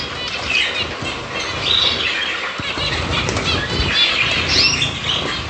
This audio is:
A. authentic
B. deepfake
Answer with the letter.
A